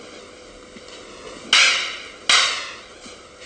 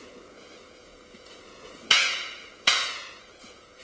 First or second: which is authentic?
first